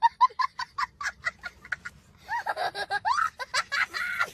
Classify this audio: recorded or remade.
recorded